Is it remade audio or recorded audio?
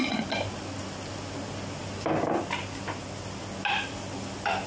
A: recorded